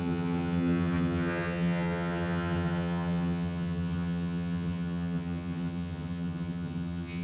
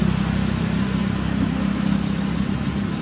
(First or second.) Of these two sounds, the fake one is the first